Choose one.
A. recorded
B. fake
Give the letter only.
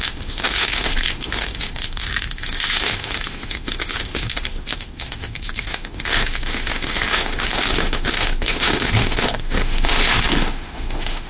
B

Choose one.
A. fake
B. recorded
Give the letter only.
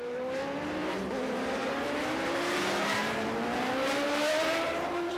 A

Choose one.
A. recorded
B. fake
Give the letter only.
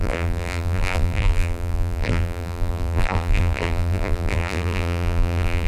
B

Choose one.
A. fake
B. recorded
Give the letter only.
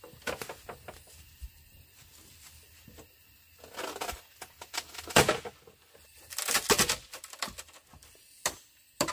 B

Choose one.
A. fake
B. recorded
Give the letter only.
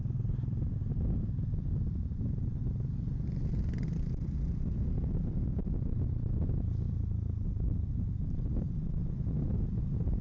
B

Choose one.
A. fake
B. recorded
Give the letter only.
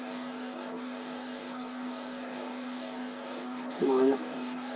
A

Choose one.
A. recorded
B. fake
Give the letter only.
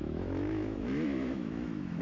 B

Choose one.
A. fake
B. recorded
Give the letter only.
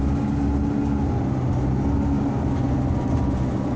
B